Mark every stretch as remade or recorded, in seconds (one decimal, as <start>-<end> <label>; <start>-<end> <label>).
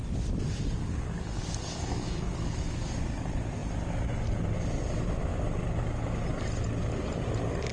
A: 0.0-0.8 recorded; 0.8-2.9 remade; 2.9-7.7 recorded